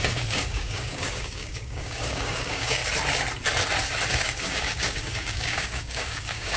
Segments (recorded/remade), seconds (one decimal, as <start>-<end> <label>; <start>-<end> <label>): 0.0-2.8 remade; 2.8-4.1 recorded; 4.1-6.6 remade